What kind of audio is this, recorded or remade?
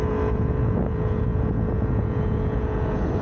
remade